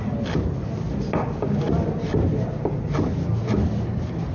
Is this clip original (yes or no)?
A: yes